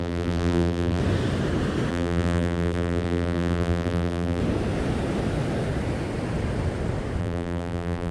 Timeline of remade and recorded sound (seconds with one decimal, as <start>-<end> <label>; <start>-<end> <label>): 0.0-1.0 remade; 1.0-1.9 recorded; 1.9-4.4 remade; 4.4-7.2 recorded; 7.2-8.1 remade